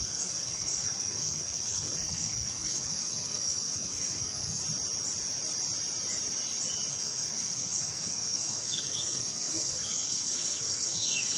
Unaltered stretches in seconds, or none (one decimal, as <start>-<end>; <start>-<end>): 4.6-6.9